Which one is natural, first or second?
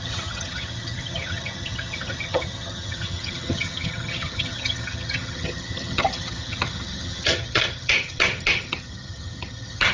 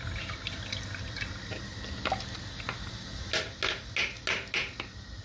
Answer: second